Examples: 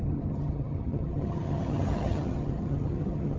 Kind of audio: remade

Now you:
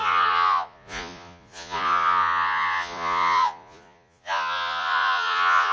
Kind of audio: remade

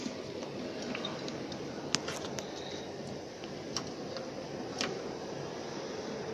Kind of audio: recorded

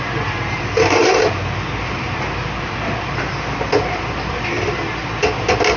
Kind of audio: recorded